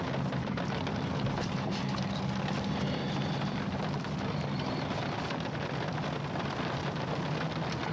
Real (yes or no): yes